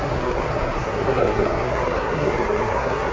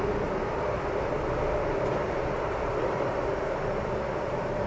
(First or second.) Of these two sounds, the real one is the second